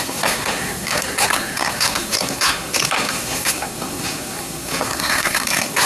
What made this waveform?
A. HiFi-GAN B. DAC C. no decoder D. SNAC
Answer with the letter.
D